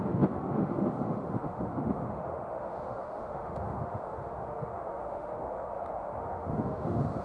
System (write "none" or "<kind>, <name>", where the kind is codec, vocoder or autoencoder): autoencoder, DAC-VAE